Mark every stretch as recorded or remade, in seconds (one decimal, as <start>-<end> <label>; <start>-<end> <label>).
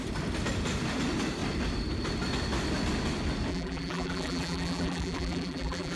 0.0-3.5 recorded; 3.5-6.0 remade